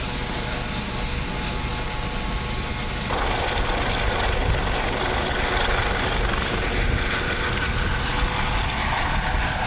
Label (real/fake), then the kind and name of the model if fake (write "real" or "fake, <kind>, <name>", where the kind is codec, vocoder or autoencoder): real